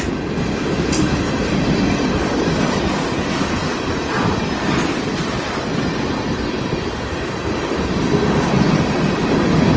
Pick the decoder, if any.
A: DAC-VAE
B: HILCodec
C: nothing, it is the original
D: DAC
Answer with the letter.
C